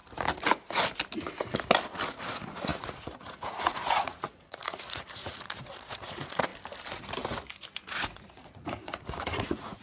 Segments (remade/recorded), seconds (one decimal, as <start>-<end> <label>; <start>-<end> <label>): 0.0-2.2 recorded; 2.2-6.5 remade; 6.5-7.7 recorded; 7.7-9.8 remade